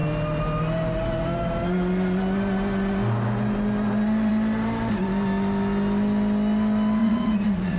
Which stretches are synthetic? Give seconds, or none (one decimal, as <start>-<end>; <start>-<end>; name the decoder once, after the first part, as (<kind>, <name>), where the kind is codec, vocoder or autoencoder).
7.0-7.8 (vocoder, Vocos)